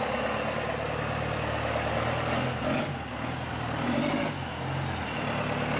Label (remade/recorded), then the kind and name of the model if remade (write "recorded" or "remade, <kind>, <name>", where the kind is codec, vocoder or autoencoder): recorded